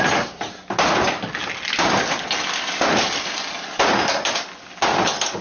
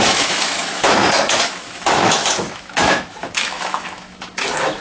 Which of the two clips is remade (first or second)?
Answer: second